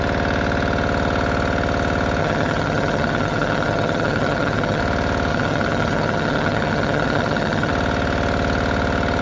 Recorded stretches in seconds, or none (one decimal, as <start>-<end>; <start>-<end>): 0.0-2.2; 4.8-5.3; 7.7-9.2